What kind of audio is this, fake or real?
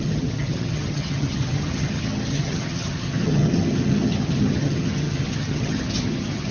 fake